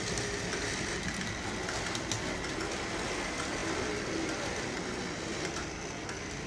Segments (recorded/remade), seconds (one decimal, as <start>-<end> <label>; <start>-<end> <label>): 0.0-6.5 recorded